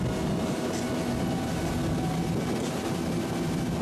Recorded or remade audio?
recorded